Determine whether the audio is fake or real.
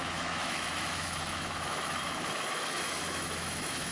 fake